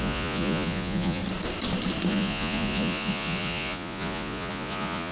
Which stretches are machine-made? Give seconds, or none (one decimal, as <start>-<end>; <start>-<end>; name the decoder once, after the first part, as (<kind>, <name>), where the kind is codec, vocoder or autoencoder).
0.0-1.2 (vocoder, Vocos); 2.1-5.1